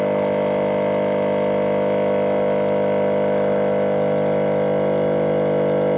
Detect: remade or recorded recorded